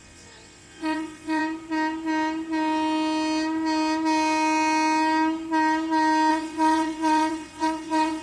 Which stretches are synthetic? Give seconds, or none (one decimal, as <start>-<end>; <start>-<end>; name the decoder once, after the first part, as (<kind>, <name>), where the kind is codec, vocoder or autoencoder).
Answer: 0.0-1.4 (vocoder, WaveNeXt); 6.3-8.2